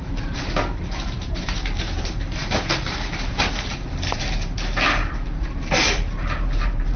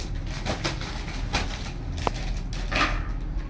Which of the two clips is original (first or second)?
second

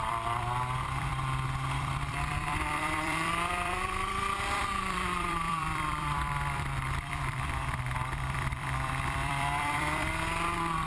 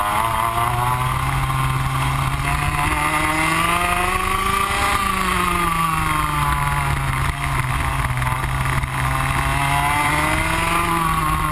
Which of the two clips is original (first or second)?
second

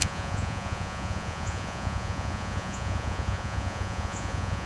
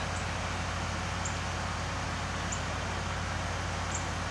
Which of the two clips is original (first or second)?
second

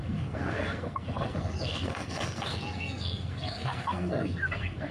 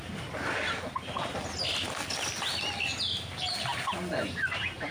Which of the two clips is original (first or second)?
second